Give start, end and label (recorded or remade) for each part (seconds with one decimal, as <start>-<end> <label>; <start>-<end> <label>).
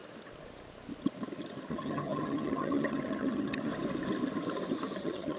0.0-1.7 recorded; 1.7-3.7 remade; 3.7-5.0 recorded; 5.0-5.4 remade